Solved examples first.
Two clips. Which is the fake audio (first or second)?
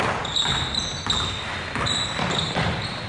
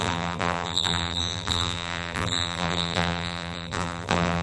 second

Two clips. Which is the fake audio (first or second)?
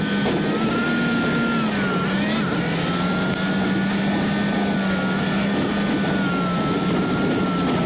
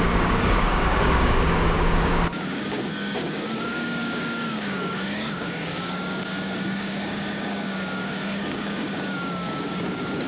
second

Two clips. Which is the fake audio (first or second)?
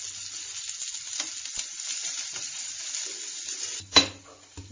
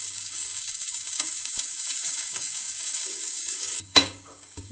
second